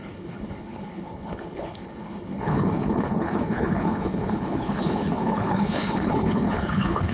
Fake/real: fake